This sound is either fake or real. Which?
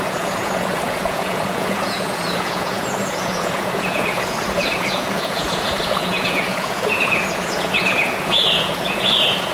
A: fake